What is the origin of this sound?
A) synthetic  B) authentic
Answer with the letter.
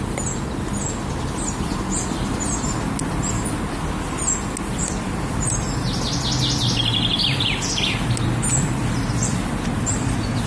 B